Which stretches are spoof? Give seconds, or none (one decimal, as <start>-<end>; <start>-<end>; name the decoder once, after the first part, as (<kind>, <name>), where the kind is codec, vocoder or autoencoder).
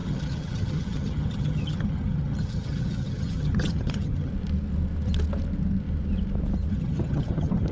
0.0-4.3 (vocoder, HiFi-GAN); 6.7-7.7